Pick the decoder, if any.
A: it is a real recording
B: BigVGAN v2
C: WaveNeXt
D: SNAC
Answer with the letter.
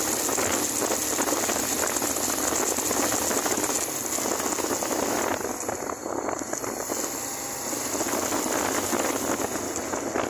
A